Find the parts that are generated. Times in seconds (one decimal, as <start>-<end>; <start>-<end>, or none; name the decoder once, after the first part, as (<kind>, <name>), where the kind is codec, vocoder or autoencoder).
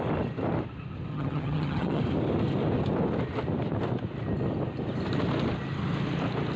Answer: 1.1-2.0 (vocoder, HiFi-GAN)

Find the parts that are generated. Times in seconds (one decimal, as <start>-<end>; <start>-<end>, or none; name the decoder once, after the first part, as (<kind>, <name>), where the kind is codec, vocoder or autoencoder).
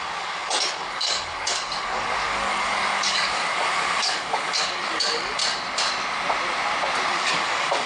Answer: 0.0-5.4 (codec, DAC); 7.1-7.9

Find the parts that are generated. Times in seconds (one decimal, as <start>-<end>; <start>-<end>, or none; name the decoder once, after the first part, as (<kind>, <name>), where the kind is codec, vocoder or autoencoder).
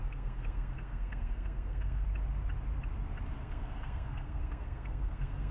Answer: 0.0-2.1 (codec, SNAC); 3.4-5.5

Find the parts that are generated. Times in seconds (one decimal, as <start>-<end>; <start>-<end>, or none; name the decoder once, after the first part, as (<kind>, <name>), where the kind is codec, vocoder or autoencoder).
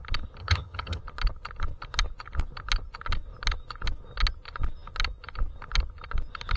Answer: 0.4-1.0 (vocoder, HiFi-GAN)